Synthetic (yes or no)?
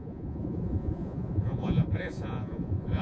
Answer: yes